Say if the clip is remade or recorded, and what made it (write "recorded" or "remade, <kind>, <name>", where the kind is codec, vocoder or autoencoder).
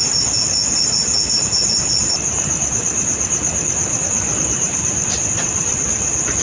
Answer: recorded